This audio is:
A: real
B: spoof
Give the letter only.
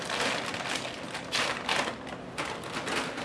A